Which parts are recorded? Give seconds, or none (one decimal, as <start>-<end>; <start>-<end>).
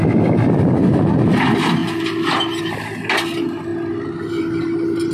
0.0-5.1